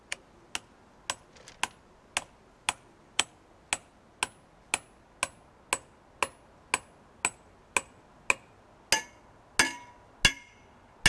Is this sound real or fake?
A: real